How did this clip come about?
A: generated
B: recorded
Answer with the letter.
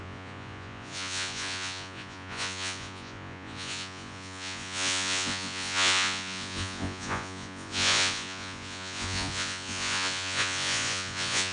A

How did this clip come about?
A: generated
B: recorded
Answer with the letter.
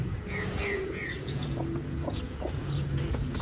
A